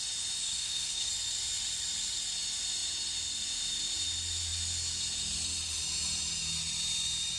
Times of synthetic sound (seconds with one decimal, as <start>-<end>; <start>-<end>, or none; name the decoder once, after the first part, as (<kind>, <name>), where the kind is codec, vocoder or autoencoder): 0.4-1.1 (codec, SNAC)